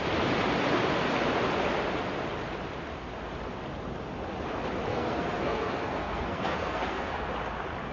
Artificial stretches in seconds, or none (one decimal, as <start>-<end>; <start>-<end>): 4.9-7.3

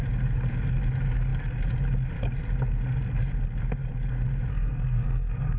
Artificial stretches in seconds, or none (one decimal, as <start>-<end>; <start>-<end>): 4.5-5.6

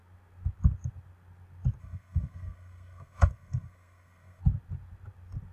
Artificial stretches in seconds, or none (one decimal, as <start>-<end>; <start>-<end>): 1.8-4.4

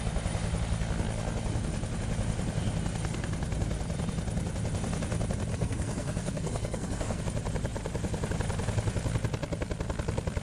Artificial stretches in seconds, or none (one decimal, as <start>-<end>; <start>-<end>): 5.5-7.2